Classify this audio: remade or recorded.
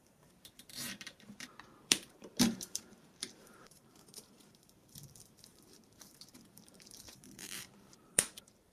remade